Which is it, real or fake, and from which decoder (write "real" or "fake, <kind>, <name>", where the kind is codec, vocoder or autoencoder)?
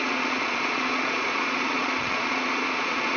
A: fake, vocoder, Vocos